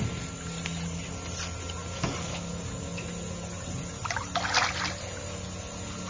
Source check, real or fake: real